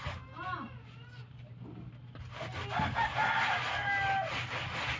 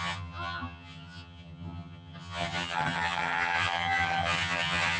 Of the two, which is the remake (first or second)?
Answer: second